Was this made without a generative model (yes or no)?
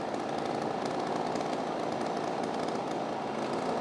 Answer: yes